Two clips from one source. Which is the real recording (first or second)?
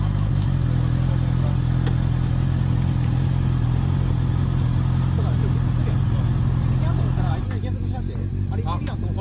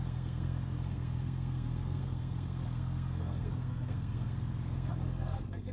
first